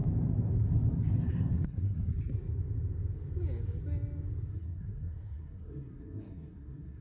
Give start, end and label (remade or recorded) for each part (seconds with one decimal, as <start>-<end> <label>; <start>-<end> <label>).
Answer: 0.0-1.5 recorded; 1.5-2.1 remade; 2.1-4.5 recorded; 4.5-7.0 remade